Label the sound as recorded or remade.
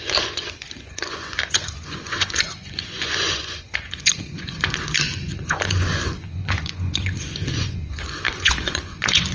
remade